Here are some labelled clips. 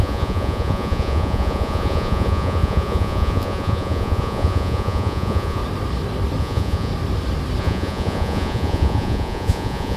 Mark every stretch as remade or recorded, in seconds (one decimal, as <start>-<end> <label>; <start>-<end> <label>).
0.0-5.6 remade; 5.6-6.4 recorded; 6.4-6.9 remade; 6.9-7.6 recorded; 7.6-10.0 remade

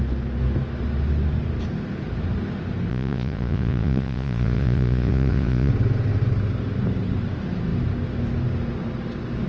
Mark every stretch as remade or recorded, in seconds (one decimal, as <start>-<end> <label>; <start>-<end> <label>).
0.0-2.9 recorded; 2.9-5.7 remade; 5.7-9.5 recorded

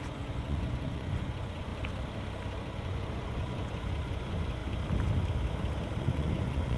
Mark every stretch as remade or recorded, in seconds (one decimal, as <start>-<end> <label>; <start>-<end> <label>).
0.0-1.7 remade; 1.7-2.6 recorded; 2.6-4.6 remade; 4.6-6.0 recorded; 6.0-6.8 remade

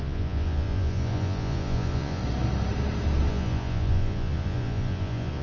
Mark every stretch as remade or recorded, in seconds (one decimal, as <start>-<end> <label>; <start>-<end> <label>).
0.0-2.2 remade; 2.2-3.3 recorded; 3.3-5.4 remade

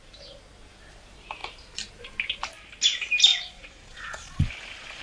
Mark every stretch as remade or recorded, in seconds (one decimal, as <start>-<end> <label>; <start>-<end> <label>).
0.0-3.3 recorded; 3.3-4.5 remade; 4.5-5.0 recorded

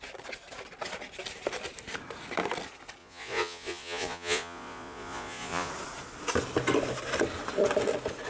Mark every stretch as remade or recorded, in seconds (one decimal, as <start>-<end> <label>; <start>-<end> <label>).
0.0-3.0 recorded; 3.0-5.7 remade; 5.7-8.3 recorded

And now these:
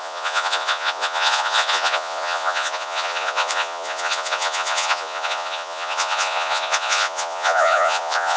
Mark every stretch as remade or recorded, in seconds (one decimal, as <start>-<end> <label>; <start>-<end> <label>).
0.0-8.4 remade